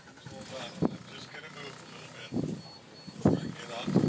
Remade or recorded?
recorded